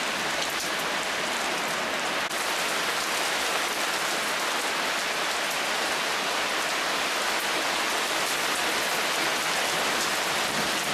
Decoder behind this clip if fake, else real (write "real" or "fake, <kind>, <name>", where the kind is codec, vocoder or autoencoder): real